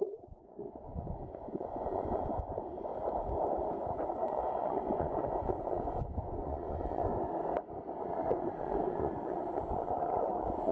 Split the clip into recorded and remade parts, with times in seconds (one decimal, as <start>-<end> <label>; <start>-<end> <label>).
0.0-2.3 remade; 2.3-4.2 recorded; 4.2-7.1 remade; 7.1-8.0 recorded; 8.0-10.7 remade